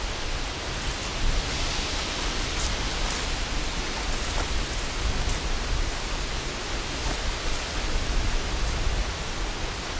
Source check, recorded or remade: recorded